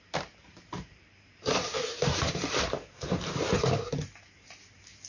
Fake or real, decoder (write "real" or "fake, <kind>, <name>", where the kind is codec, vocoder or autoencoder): fake, vocoder, BigVGAN v2